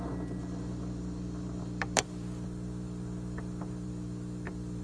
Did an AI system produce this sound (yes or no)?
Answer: yes